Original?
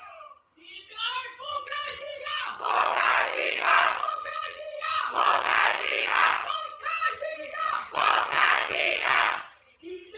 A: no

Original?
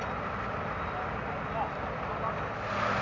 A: yes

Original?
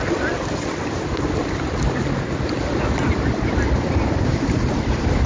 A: yes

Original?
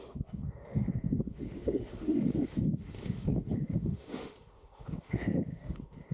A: no